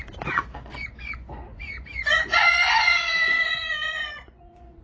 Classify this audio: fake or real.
fake